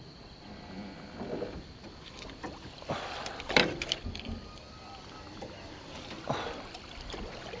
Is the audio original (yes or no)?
yes